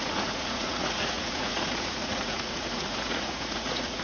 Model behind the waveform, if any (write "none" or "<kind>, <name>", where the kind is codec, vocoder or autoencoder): vocoder, Vocos